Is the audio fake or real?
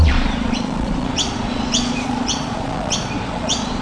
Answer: fake